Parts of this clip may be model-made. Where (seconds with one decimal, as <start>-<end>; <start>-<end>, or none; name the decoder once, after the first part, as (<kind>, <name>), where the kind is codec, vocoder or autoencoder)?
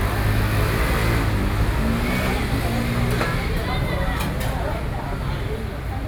none